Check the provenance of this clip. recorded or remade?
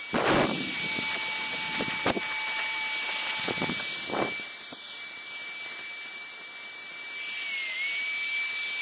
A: recorded